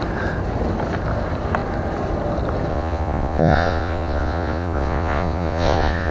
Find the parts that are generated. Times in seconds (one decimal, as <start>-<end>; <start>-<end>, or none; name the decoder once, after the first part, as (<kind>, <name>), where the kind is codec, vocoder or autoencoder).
2.7-6.1 (vocoder, Vocos)